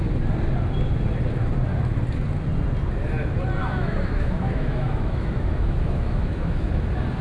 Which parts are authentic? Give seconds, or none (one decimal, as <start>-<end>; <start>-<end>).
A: 0.0-3.6; 6.7-7.2